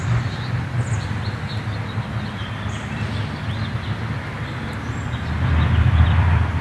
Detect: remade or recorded recorded